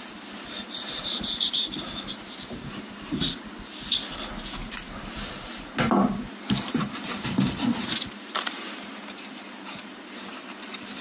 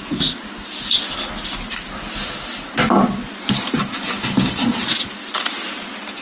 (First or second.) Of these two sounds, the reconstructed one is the first